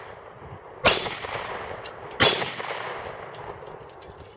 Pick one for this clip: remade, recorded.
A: recorded